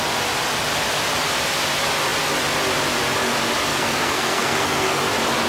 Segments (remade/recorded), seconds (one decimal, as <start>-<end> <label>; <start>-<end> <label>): 0.0-3.7 recorded; 3.7-5.0 remade; 5.0-5.5 recorded